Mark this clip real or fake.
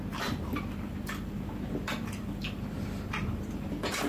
fake